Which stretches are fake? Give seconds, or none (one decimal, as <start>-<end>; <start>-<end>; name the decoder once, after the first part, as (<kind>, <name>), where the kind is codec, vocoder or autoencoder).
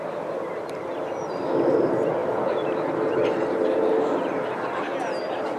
0.0-5.6 (vocoder, BigVGAN v2)